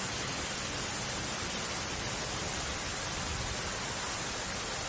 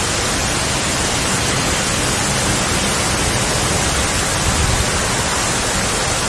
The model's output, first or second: first